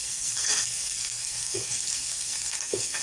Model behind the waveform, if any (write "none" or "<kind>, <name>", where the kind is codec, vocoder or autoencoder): codec, SNAC